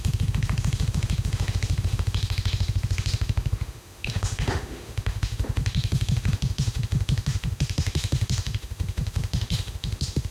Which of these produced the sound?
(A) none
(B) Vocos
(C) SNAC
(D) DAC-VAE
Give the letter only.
D